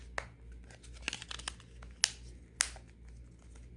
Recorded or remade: recorded